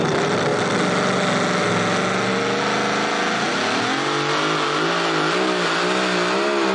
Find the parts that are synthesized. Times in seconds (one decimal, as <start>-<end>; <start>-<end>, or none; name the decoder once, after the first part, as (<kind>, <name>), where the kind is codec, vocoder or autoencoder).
none